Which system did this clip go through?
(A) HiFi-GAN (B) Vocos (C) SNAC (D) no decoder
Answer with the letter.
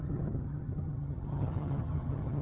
A